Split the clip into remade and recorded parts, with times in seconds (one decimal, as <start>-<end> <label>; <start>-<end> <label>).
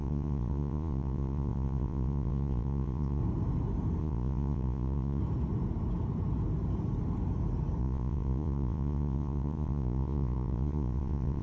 0.0-3.2 remade; 3.2-4.0 recorded; 4.0-5.2 remade; 5.2-7.8 recorded; 7.8-11.4 remade